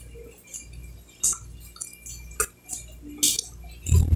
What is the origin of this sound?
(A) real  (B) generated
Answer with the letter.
A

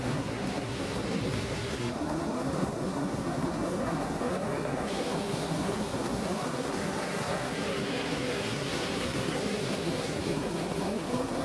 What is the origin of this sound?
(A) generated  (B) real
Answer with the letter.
A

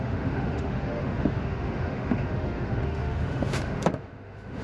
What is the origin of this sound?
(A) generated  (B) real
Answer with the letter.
A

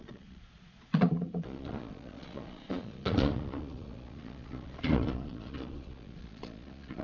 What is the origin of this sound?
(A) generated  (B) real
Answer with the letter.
A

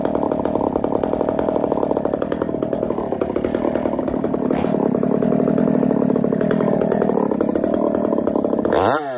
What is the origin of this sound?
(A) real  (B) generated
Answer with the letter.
A